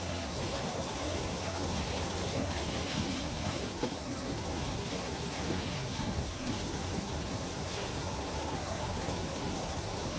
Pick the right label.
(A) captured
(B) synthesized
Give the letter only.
B